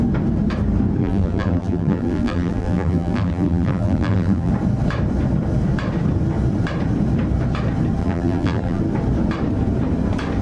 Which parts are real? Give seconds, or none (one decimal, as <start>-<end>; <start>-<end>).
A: 0.0-1.0; 4.5-8.0; 8.8-10.4